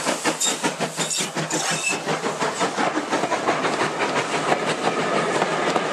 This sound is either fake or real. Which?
real